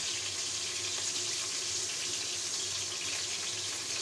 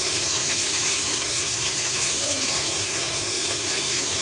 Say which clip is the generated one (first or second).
second